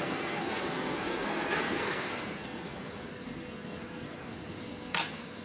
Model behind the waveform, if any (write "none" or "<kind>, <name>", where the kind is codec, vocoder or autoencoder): codec, SNAC